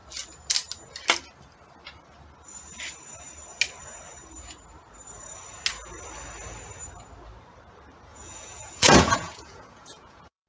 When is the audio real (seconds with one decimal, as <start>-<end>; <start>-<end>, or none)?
0.0-8.1